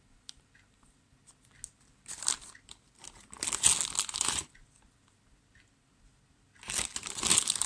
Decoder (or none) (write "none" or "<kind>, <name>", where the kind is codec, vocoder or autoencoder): none